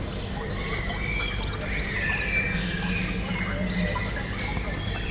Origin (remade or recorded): recorded